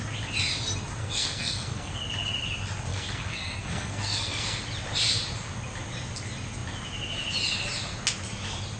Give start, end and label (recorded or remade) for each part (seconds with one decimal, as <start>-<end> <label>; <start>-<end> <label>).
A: 0.0-1.0 recorded; 1.0-2.0 remade; 2.0-2.9 recorded; 2.9-4.6 remade; 4.6-8.8 recorded